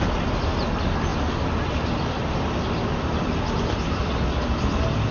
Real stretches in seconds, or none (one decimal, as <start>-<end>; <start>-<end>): 0.0-5.1